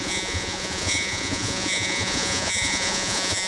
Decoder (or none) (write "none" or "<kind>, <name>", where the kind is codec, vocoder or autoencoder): vocoder, Vocos